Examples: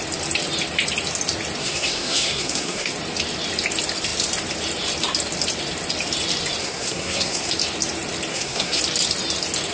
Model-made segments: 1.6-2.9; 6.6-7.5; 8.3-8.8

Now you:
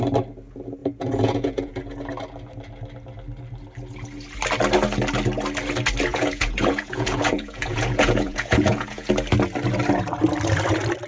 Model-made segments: 0.8-1.8; 6.1-9.1

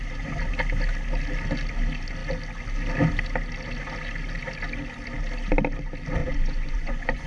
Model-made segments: 6.2-7.3

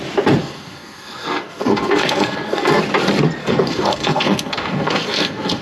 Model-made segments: 0.4-2.8; 3.4-5.6

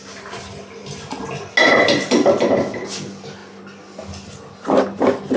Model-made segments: none

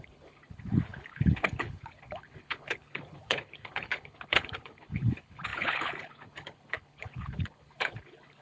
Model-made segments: 0.0-8.4

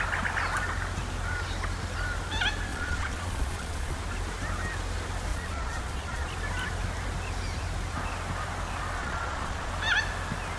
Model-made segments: 2.7-4.0; 5.3-6.3; 9.0-9.7